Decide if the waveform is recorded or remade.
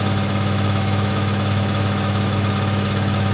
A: remade